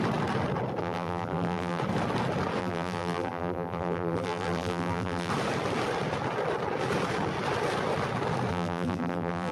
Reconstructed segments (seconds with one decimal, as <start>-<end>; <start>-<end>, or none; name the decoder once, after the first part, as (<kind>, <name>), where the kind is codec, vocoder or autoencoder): 0.8-1.8 (vocoder, BigVGAN v2); 2.6-5.3; 8.5-9.5